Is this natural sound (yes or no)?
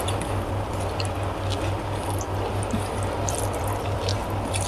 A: yes